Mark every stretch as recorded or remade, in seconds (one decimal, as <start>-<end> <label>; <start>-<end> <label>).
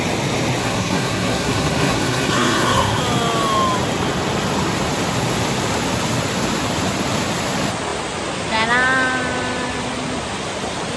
0.0-0.6 recorded; 0.6-3.0 remade; 3.0-11.0 recorded